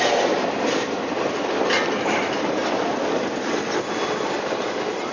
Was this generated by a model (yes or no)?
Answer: no